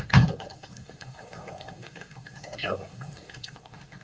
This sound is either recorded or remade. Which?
remade